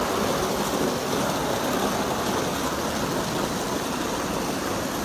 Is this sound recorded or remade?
recorded